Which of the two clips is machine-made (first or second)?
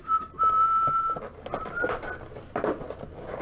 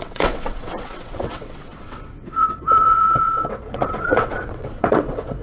second